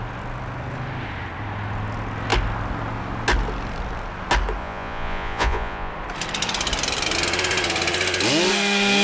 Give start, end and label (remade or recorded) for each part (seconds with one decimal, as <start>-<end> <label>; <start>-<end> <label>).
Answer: 0.0-4.6 recorded; 4.6-5.9 remade; 5.9-9.0 recorded